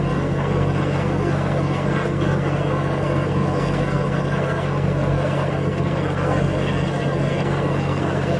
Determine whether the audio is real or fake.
fake